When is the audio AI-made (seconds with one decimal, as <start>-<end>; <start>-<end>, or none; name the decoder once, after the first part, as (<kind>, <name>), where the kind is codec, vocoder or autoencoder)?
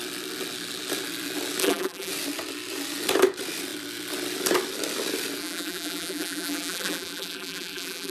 1.6-2.1 (vocoder, BigVGAN v2); 5.4-8.1